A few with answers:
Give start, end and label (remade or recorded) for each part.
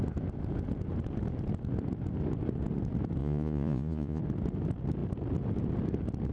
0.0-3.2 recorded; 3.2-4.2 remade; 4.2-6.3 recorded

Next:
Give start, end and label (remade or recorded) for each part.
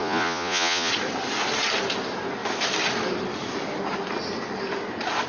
0.0-0.9 remade; 0.9-5.3 recorded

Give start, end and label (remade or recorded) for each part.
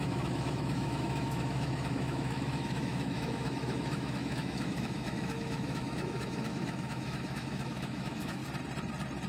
0.0-8.4 remade; 8.4-9.3 recorded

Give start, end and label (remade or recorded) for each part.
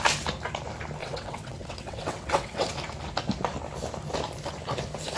0.0-1.0 recorded; 1.0-2.7 remade; 2.7-5.2 recorded